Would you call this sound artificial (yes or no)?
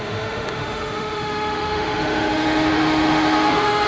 yes